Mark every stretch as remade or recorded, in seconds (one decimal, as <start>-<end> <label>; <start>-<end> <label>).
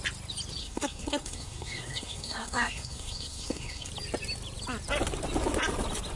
0.0-0.6 recorded; 0.6-3.9 remade; 3.9-6.2 recorded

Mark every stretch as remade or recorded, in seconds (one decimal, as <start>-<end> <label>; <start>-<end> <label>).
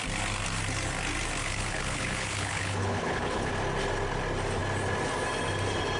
0.0-1.4 recorded; 1.4-3.5 remade; 3.5-6.0 recorded